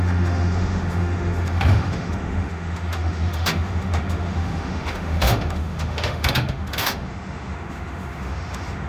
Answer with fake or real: fake